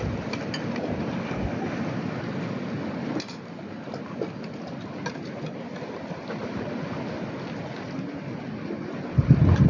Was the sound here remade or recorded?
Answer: recorded